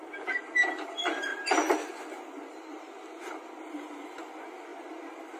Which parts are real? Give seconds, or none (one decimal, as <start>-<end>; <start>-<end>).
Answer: 0.0-5.4